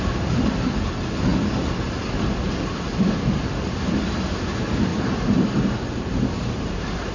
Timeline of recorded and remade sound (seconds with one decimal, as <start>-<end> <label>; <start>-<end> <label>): 0.0-4.9 recorded; 4.9-7.1 remade